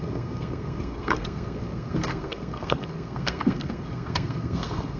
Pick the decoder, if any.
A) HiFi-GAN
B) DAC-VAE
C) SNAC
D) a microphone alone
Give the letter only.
C